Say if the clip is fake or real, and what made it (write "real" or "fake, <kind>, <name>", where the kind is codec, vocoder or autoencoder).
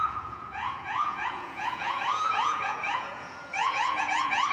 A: fake, vocoder, Vocos